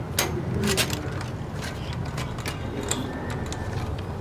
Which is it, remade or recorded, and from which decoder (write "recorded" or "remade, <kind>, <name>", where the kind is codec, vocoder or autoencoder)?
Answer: recorded